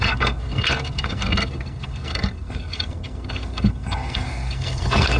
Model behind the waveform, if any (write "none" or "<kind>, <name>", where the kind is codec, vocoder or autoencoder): codec, SNAC